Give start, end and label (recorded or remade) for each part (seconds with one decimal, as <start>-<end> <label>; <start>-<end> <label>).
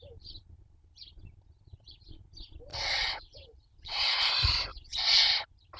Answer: 0.0-2.7 recorded; 2.7-4.3 remade; 4.3-4.7 recorded; 4.7-5.3 remade; 5.3-5.8 recorded